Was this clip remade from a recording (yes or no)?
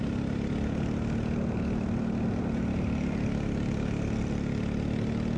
no